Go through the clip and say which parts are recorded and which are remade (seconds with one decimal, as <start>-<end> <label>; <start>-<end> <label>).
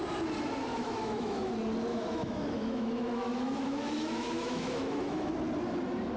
0.0-0.7 recorded; 0.7-1.5 remade; 1.5-1.9 recorded; 1.9-5.3 remade; 5.3-6.2 recorded